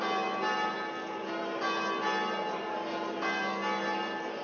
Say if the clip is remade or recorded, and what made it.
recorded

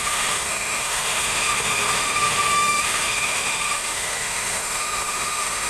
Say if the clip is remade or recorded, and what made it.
remade, autoencoder, DAC-VAE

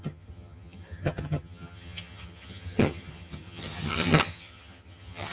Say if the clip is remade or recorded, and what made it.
remade, vocoder, HiFi-GAN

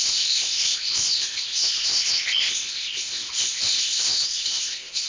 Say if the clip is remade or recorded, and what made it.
remade, codec, ZipCodec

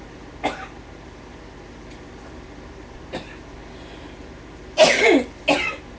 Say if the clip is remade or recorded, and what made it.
recorded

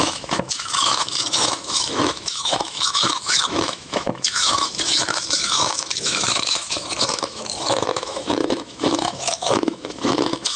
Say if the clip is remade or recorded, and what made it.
remade, autoencoder, DAC-VAE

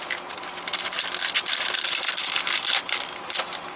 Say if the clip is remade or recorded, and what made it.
recorded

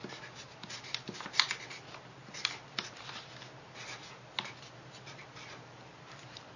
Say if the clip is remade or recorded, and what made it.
recorded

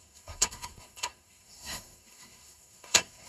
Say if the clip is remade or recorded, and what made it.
remade, codec, SNAC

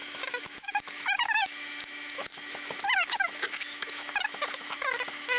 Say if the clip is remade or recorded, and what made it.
remade, autoencoder, DAC-VAE